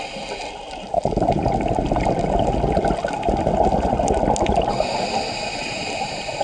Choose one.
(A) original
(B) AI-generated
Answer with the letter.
A